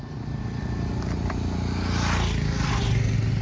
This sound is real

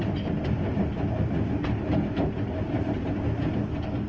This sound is real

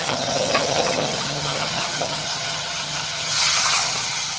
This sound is fake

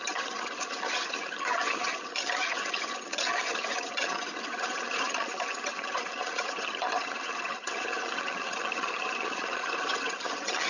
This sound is fake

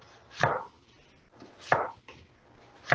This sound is real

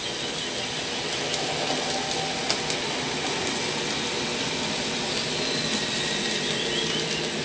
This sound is real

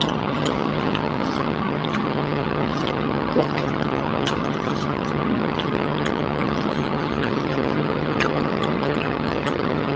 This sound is fake